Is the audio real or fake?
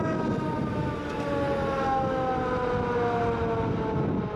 real